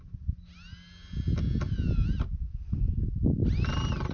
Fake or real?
real